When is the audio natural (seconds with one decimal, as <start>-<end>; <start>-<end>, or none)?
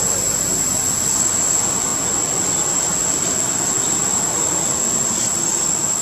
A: 0.0-6.0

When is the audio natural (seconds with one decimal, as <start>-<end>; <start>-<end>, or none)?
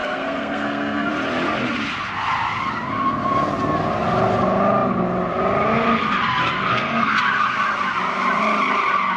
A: 1.1-6.7; 7.2-9.2